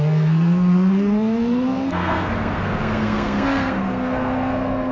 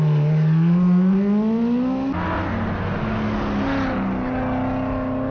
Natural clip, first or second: second